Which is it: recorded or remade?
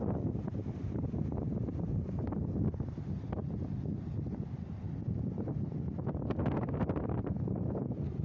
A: recorded